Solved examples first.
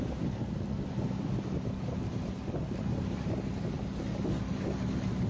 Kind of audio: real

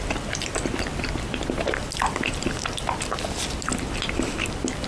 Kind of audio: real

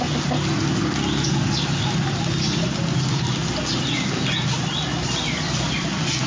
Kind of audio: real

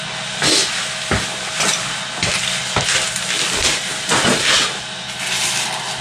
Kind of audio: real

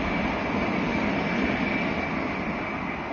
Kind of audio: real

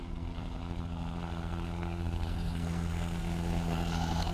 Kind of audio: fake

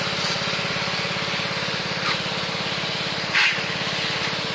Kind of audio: real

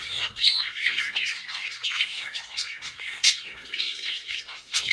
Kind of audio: fake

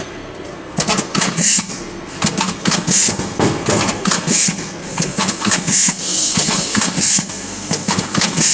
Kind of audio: fake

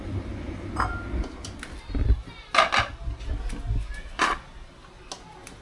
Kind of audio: real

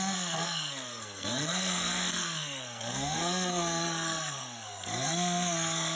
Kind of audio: fake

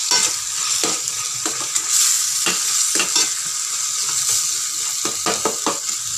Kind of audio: real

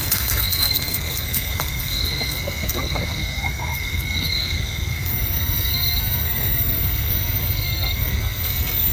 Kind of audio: fake